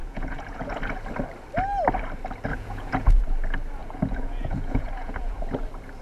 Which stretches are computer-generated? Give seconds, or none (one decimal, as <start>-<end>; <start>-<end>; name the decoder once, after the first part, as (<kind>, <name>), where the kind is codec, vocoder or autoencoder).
0.0-0.8 (vocoder, Vocos); 2.5-3.2; 3.8-5.4